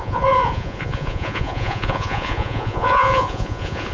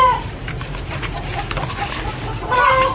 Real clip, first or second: second